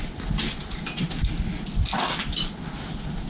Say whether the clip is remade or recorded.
recorded